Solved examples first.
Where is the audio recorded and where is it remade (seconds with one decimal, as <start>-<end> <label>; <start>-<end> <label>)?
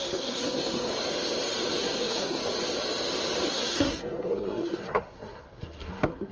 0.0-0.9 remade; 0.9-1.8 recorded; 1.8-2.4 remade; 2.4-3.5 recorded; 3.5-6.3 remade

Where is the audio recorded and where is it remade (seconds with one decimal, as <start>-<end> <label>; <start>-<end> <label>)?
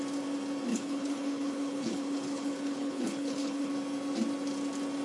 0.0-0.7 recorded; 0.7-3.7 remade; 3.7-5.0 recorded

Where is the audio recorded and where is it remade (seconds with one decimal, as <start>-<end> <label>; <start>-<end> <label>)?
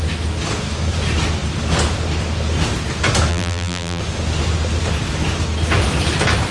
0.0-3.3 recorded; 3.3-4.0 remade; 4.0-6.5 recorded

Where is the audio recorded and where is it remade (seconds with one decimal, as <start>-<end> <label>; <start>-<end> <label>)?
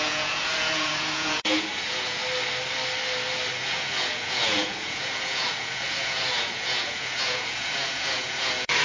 0.0-2.2 remade; 2.2-3.5 recorded; 3.5-8.8 remade